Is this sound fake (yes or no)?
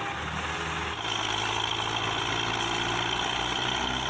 no